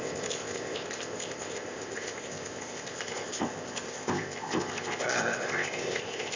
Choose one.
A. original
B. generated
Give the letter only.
B